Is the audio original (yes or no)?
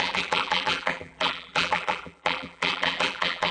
no